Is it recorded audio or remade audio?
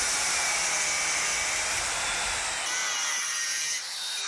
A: recorded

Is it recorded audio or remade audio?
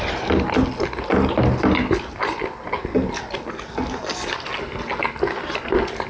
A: recorded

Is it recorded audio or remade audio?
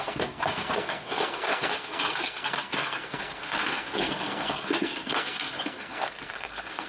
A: remade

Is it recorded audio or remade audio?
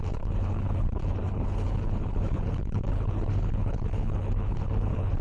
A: remade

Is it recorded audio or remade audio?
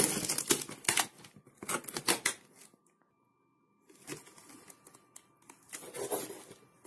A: recorded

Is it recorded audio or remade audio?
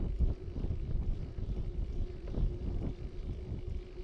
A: recorded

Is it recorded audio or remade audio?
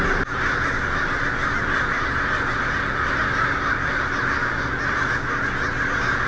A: recorded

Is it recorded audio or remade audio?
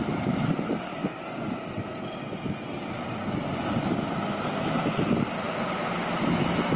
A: recorded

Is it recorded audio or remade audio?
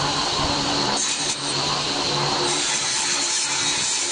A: remade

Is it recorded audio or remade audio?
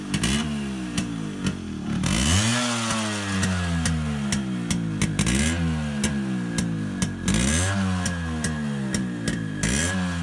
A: recorded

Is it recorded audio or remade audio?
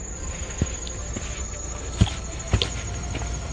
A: recorded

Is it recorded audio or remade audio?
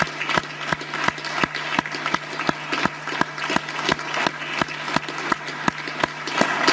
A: recorded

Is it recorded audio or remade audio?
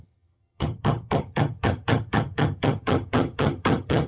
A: remade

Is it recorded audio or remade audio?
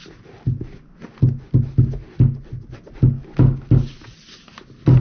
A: recorded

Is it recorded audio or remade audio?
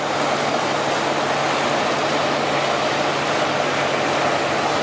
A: recorded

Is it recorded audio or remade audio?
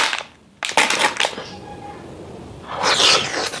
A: recorded